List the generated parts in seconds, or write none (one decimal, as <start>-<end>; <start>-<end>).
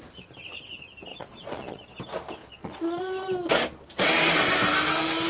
1.1-2.0; 2.4-3.0